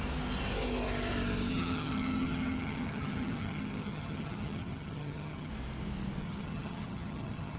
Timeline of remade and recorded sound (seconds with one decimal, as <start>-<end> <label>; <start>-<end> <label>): 0.0-1.5 recorded; 1.5-5.5 remade; 5.5-6.2 recorded; 6.2-7.6 remade